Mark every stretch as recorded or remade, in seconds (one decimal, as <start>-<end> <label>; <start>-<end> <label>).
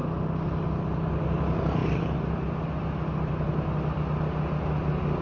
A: 0.0-5.2 recorded